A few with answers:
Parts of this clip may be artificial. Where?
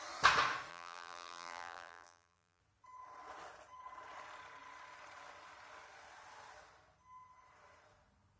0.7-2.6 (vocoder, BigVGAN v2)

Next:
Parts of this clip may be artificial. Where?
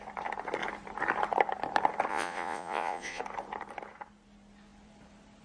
2.1-3.2 (vocoder, Vocos)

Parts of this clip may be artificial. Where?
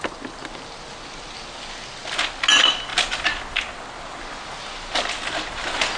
none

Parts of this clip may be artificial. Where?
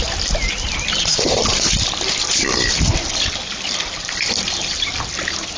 none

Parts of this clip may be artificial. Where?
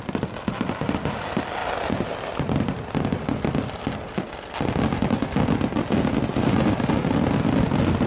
none